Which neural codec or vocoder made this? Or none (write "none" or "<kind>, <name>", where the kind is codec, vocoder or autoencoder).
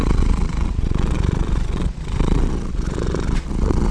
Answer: vocoder, Vocos